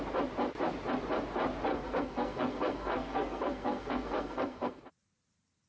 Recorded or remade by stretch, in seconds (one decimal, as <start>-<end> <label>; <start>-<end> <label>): 0.0-1.7 recorded; 1.7-4.8 remade; 4.8-5.7 recorded

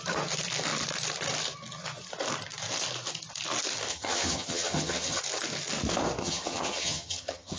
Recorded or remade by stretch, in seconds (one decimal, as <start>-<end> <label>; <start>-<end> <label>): 0.0-3.9 recorded; 3.9-5.2 remade; 5.2-6.2 recorded; 6.2-7.6 remade